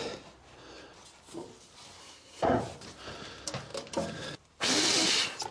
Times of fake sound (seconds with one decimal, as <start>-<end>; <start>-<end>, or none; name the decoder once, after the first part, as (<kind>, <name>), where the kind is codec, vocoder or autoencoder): 2.0-2.6 (codec, SNAC)